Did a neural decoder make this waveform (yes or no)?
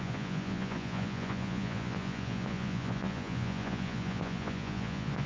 yes